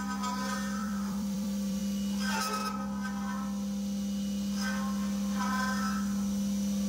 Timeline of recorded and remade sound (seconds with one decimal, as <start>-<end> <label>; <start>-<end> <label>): 0.0-0.8 recorded; 0.8-1.8 remade; 1.8-6.9 recorded